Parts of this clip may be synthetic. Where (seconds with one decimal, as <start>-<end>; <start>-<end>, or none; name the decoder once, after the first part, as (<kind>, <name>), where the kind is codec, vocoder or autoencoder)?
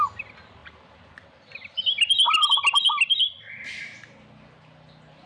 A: none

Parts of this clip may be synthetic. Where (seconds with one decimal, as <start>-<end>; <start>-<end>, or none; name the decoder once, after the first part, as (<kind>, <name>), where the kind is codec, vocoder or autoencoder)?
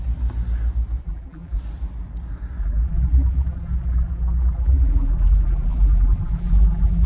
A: 1.0-1.6 (vocoder, BigVGAN v2); 2.6-7.1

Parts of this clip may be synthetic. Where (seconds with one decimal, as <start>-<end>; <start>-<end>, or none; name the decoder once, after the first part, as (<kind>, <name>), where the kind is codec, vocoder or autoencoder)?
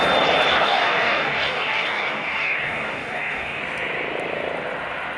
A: 0.5-3.6 (codec, DAC)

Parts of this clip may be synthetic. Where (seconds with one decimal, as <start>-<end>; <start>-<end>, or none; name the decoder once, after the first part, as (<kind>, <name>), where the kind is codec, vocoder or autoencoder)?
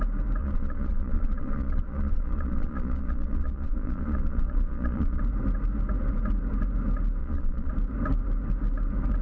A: 0.4-5.2 (vocoder, Vocos); 7.2-7.7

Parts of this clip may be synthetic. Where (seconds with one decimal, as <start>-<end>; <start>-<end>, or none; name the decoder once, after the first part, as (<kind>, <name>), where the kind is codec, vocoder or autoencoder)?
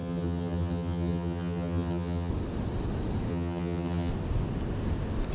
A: 0.0-2.3 (vocoder, HiFi-GAN); 3.3-4.1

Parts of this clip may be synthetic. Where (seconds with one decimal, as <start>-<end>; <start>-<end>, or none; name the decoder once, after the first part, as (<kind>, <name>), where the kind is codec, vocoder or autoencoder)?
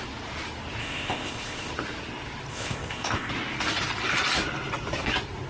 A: 0.8-1.7 (codec, ZipCodec); 2.5-3.3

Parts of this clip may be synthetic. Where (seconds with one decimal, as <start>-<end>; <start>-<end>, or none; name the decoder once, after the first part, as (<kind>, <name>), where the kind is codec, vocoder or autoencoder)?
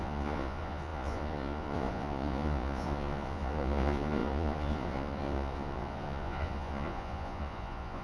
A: 0.0-8.0 (vocoder, Vocos)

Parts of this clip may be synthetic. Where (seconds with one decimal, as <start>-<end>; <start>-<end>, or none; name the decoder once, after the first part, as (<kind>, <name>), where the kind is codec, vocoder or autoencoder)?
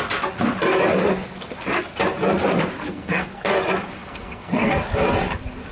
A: 2.9-3.5 (codec, SNAC); 4.0-4.7